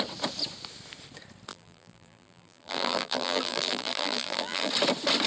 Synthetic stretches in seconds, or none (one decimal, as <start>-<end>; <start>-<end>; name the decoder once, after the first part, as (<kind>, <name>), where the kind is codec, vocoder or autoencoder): 1.5-4.7 (vocoder, BigVGAN v2)